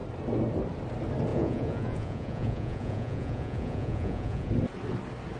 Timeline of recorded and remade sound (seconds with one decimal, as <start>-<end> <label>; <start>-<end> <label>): 0.0-1.3 recorded; 1.3-4.5 remade; 4.5-5.4 recorded